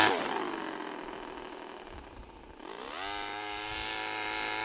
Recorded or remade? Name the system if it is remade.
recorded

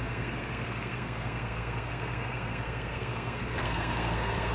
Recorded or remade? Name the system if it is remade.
remade, codec, SNAC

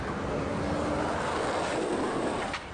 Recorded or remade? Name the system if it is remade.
recorded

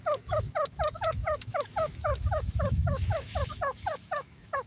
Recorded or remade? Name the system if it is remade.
remade, autoencoder, DAC-VAE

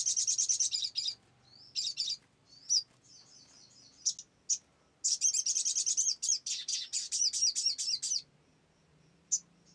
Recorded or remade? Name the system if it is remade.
recorded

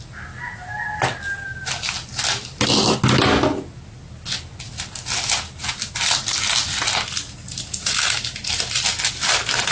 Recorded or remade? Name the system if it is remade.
recorded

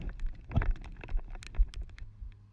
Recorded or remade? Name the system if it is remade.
recorded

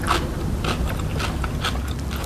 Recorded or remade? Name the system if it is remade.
recorded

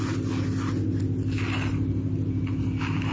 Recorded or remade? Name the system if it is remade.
recorded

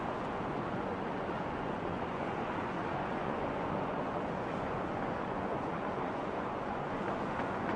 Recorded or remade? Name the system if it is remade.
remade, vocoder, Vocos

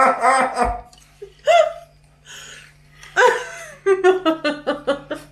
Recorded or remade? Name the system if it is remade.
recorded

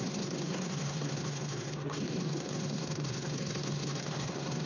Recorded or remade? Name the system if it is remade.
remade, codec, SNAC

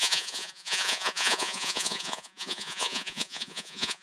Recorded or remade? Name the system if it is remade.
remade, vocoder, Vocos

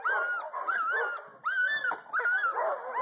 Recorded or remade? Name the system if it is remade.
recorded